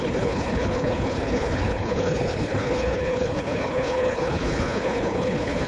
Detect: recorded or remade remade